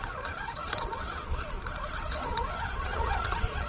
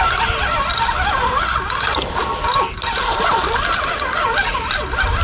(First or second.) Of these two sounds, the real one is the second